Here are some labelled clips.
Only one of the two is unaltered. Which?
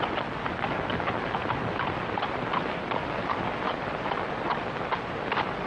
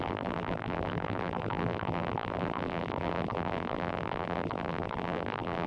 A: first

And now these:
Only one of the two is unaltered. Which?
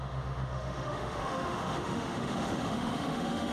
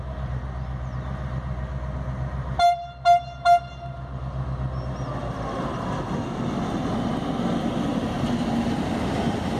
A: second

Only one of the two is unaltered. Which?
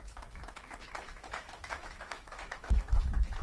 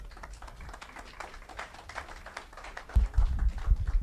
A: second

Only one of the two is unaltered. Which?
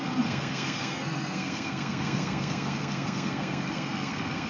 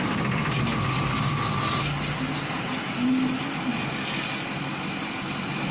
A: second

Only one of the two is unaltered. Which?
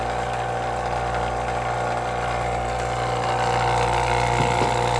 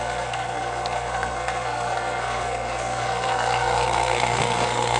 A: first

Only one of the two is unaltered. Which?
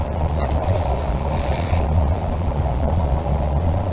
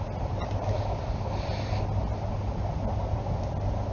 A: second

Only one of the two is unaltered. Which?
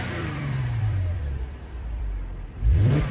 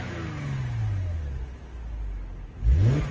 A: second